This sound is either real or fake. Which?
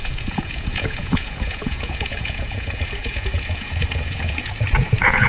fake